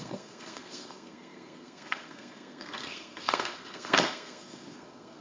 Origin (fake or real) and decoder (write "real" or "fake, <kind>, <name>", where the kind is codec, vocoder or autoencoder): fake, codec, SNAC